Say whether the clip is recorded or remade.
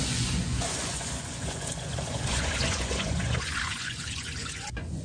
remade